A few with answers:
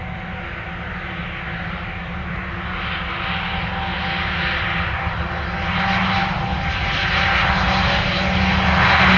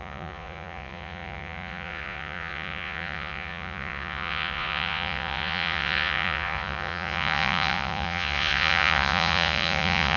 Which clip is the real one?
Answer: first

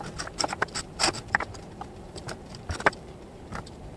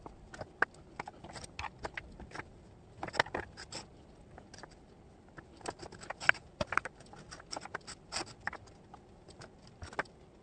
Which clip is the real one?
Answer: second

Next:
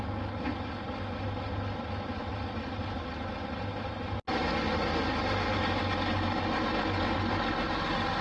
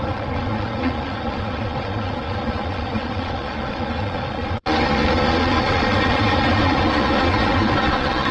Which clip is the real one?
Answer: first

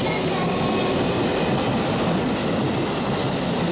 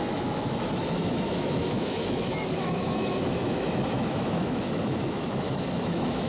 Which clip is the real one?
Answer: first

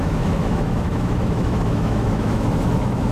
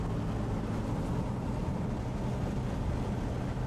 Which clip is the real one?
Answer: second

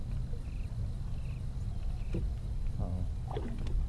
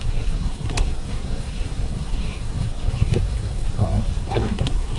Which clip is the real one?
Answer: first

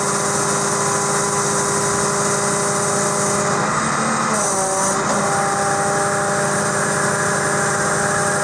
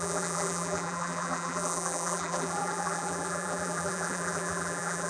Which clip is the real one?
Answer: first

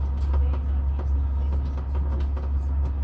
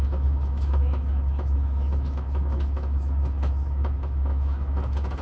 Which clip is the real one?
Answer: first